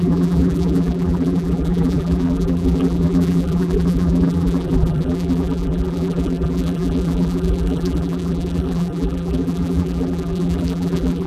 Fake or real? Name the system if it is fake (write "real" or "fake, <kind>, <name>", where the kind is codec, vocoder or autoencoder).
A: fake, vocoder, BigVGAN v2